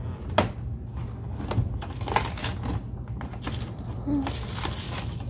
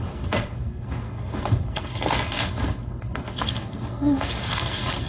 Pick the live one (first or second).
first